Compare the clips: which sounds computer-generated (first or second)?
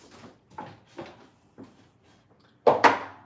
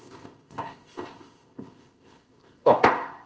second